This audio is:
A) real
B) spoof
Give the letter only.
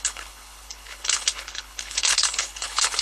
B